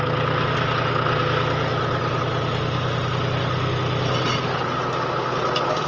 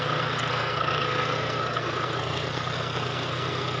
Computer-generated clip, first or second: second